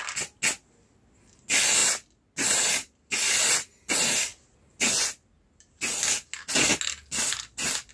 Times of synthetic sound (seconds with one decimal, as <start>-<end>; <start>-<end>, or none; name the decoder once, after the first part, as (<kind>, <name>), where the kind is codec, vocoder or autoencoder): none